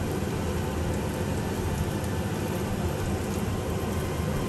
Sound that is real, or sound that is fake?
real